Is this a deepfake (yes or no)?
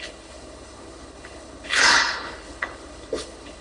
yes